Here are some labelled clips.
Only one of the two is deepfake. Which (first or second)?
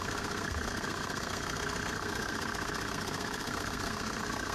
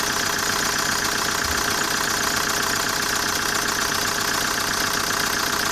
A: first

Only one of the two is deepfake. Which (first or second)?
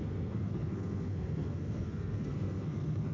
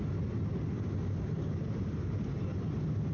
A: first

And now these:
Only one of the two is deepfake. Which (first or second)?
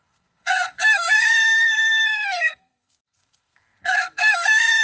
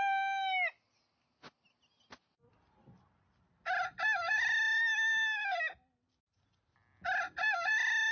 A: first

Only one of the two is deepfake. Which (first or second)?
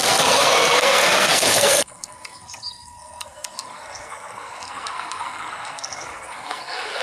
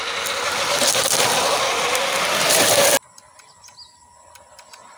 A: first